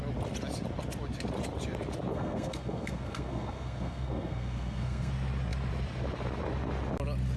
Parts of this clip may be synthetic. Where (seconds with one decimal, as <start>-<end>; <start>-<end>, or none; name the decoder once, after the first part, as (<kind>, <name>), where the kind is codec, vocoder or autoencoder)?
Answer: 2.1-5.1 (codec, SNAC)

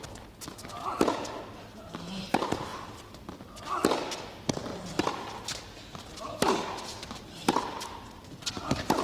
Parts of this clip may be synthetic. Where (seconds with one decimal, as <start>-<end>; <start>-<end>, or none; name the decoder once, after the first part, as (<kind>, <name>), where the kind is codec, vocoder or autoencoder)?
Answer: none

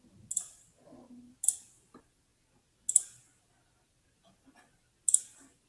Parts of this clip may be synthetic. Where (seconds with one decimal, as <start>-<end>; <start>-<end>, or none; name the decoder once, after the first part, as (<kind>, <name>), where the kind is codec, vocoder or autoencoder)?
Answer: none